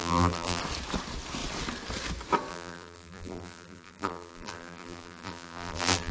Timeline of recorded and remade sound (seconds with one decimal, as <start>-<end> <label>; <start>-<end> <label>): 0.0-0.6 remade; 0.6-2.5 recorded; 2.5-6.1 remade